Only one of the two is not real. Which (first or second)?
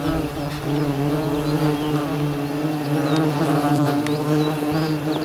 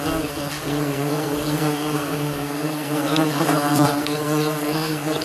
second